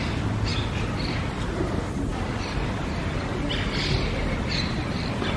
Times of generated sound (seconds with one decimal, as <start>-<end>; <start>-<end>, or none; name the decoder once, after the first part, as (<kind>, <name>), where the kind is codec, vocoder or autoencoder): none